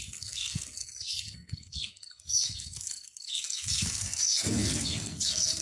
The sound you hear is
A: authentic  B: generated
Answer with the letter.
B